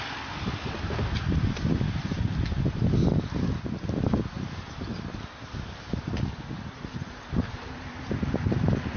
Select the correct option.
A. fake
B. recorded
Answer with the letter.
B